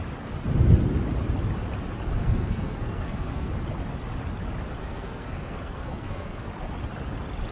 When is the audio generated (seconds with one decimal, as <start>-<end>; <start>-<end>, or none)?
2.2-3.5; 4.8-6.5